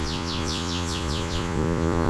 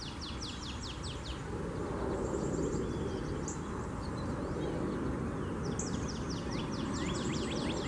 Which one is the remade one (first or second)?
first